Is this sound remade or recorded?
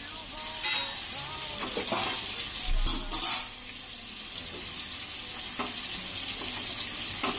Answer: recorded